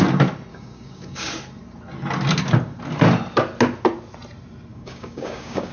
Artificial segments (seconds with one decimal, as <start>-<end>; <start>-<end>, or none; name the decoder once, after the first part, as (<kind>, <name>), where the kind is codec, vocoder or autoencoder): 0.5-1.3 (codec, DAC); 4.7-5.7